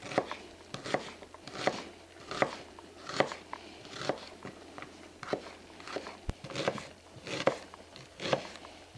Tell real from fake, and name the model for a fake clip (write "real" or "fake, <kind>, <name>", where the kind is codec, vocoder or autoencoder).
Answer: real